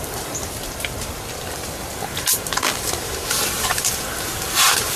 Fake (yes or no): yes